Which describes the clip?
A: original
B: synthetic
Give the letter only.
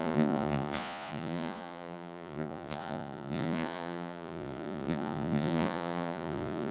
B